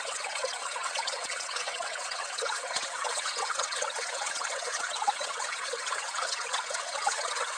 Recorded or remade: remade